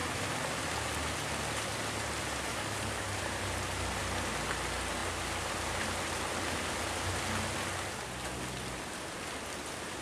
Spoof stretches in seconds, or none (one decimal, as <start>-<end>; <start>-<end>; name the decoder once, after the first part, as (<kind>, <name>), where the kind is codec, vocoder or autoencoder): 2.5-3.2 (codec, DAC)